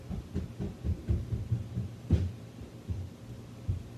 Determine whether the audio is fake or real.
real